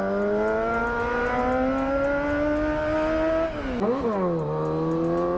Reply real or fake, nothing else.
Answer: real